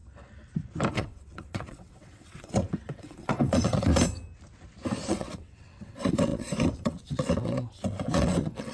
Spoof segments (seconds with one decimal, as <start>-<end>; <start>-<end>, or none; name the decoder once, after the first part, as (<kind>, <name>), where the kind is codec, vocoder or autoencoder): 0.9-3.9 (vocoder, WaveNeXt); 5.1-8.7